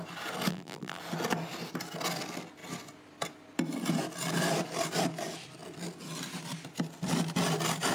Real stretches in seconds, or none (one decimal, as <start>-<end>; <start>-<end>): 0.0-0.5; 1.0-7.9